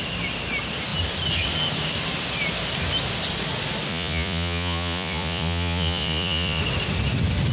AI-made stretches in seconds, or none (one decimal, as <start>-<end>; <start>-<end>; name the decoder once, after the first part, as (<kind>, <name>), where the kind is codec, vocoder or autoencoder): 3.9-6.6 (vocoder, Vocos)